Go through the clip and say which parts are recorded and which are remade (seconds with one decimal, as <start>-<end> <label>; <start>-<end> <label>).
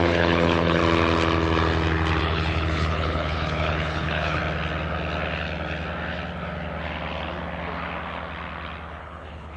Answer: 0.0-0.8 remade; 0.8-2.2 recorded; 2.2-4.4 remade; 4.4-9.0 recorded; 9.0-9.6 remade